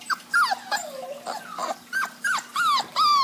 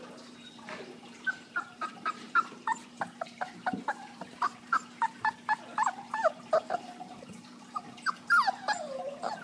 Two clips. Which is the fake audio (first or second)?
second